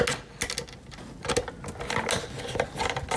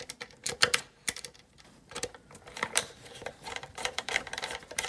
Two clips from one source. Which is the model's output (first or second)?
second